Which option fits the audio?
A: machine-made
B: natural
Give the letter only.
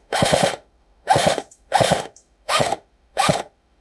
A